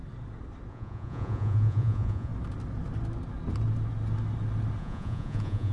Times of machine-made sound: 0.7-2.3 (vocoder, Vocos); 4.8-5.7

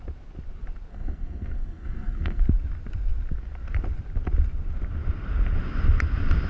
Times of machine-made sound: 0.9-2.4 (codec, SNAC)

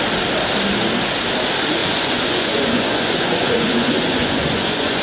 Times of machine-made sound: 1.8-5.0 (vocoder, Vocos)

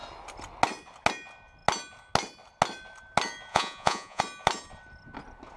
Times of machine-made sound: 3.5-4.2 (vocoder, Vocos)